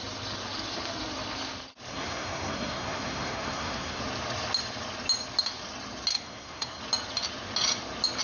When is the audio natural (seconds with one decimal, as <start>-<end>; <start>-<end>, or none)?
0.0-1.9; 4.0-6.1; 6.8-8.2